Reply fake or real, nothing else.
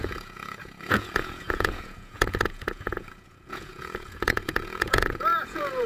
fake